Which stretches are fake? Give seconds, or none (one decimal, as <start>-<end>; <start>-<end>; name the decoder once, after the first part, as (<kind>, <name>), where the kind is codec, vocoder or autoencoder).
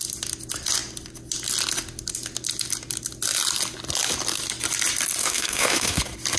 5.2-6.0 (autoencoder, DAC-VAE)